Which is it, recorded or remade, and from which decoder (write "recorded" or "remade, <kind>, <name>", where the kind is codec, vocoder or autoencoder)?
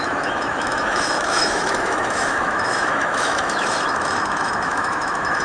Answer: remade, autoencoder, DAC-VAE